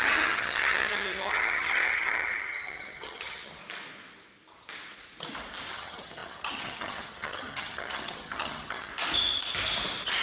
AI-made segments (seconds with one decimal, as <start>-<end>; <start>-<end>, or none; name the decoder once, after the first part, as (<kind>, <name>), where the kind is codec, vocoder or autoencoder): 0.0-3.6 (vocoder, HiFi-GAN); 5.7-8.9